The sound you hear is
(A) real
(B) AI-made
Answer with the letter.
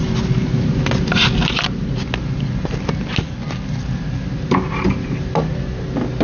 A